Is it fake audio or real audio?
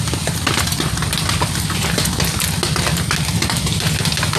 real